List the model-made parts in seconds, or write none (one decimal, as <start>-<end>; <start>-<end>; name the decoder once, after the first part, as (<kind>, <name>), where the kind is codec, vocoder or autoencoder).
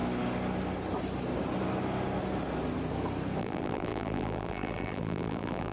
3.4-5.7 (vocoder, BigVGAN v2)